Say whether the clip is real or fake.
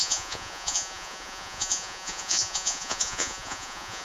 fake